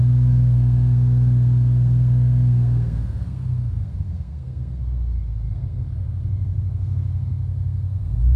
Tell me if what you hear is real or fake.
fake